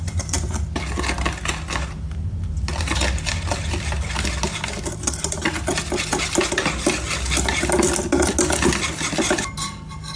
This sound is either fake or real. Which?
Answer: real